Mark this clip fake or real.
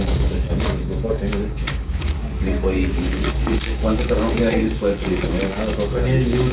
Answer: fake